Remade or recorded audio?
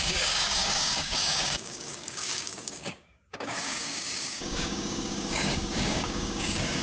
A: remade